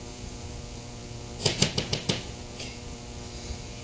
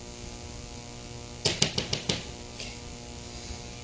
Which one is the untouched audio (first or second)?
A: second